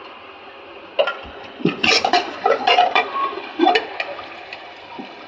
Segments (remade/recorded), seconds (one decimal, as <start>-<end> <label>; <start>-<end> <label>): 0.0-1.1 recorded; 1.1-3.6 remade; 3.6-5.3 recorded